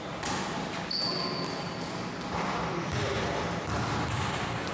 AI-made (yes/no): no